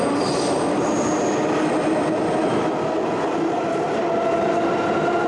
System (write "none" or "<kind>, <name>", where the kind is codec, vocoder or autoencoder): none